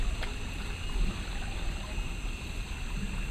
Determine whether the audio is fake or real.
real